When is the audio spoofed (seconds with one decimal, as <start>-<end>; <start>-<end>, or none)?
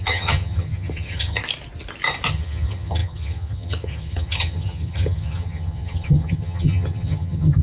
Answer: 0.0-1.4; 2.3-7.6